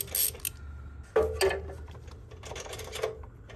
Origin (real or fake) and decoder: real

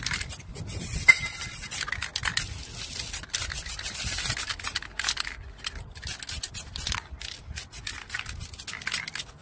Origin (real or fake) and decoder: real